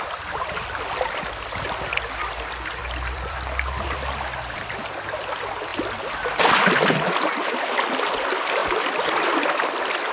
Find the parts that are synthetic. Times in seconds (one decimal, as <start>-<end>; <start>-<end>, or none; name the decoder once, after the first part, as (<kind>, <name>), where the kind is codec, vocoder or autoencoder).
2.8-4.7 (vocoder, BigVGAN v2); 5.7-6.4; 8.6-9.7